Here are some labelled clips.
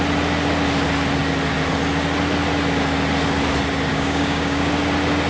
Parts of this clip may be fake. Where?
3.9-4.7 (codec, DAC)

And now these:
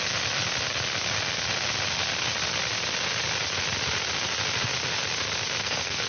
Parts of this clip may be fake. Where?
5.6-6.1 (codec, SNAC)

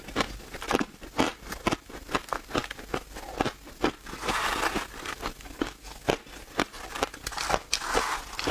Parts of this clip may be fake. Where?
none